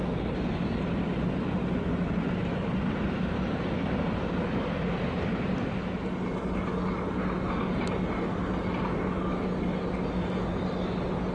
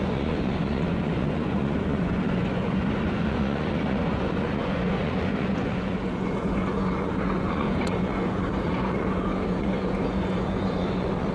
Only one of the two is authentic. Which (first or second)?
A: first